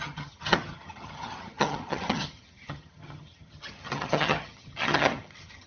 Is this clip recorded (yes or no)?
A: no